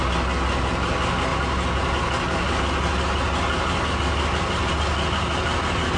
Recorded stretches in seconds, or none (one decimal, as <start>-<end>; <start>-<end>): 0.0-6.0